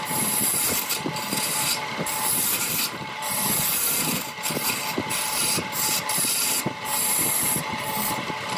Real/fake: fake